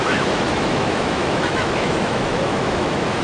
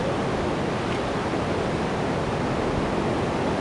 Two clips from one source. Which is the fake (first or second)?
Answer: first